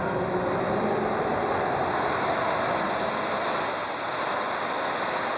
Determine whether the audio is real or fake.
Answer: real